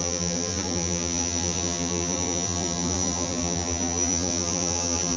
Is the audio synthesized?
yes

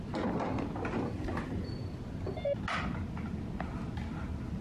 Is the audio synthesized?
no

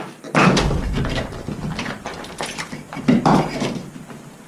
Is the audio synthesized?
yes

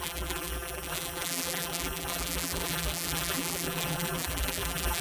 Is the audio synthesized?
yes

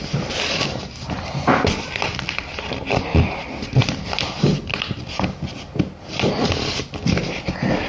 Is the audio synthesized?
no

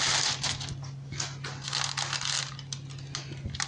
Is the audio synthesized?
no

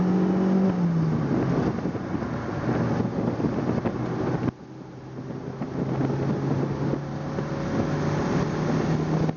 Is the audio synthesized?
no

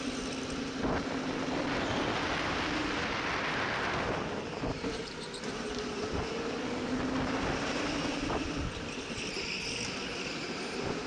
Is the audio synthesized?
yes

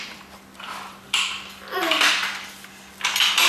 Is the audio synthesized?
no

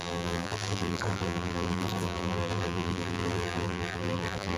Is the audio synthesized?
yes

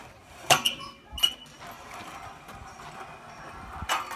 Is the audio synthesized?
no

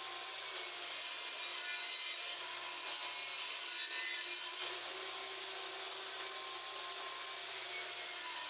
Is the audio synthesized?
no